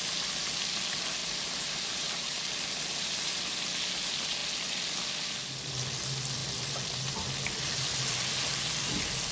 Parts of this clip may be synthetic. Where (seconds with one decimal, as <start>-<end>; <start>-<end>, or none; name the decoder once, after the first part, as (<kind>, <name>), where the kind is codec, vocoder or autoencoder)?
1.2-2.4 (vocoder, BigVGAN v2)